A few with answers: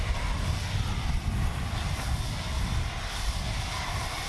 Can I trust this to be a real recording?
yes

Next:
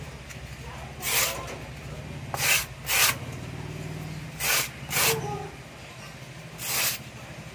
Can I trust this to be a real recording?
yes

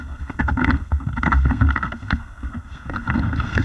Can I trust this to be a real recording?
no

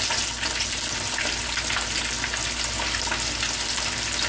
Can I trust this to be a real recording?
yes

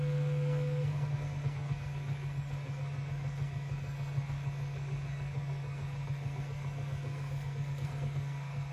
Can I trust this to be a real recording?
no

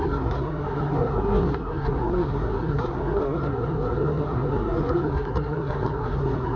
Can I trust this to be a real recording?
no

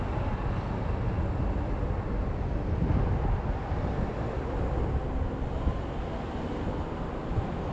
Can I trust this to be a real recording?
yes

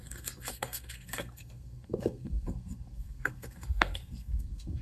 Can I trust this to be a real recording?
no